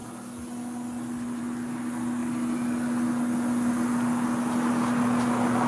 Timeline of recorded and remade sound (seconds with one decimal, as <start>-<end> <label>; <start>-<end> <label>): 0.0-5.7 recorded